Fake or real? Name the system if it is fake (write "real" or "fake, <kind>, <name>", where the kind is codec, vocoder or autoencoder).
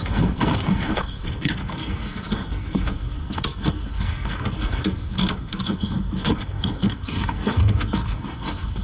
fake, codec, SNAC